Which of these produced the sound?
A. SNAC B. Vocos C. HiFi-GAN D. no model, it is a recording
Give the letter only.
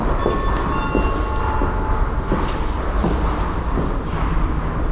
D